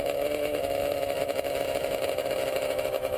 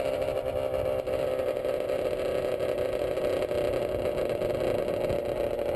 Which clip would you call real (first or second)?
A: second